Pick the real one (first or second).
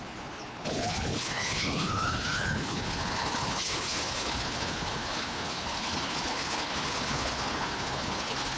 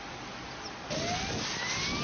second